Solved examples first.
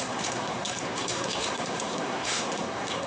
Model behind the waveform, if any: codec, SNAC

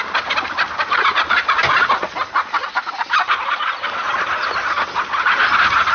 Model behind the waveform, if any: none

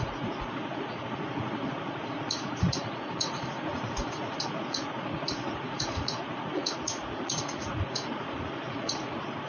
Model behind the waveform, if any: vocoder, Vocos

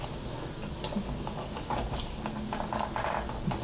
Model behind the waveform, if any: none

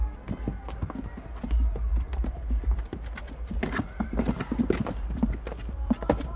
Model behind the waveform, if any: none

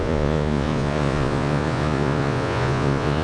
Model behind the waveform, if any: vocoder, Vocos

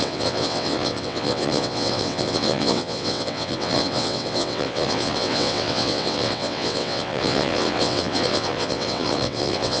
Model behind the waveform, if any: vocoder, WaveNeXt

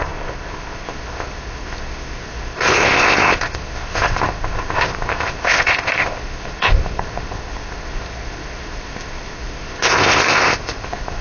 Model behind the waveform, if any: codec, ZipCodec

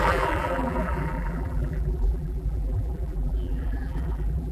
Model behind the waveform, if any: vocoder, BigVGAN v2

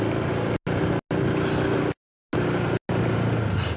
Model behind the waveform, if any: none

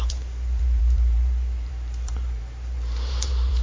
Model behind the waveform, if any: vocoder, BigVGAN v2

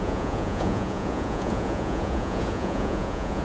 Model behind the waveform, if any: vocoder, Vocos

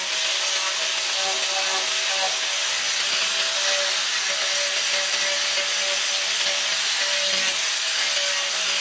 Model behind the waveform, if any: none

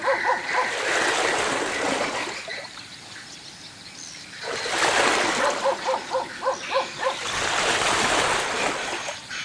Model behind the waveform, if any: none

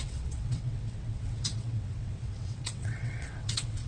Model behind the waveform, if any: vocoder, WaveNeXt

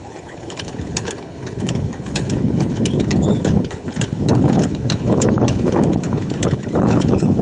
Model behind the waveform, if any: codec, HILCodec